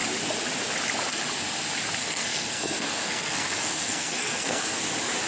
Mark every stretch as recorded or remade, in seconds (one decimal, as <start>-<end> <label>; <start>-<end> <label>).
0.0-2.0 recorded; 2.0-4.8 remade; 4.8-5.3 recorded